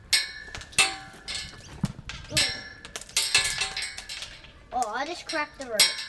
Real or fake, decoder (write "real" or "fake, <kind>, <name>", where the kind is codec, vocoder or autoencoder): real